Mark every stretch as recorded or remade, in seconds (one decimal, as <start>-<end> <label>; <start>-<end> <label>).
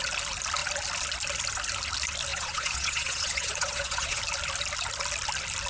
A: 0.0-2.3 recorded; 2.3-4.2 remade; 4.2-5.7 recorded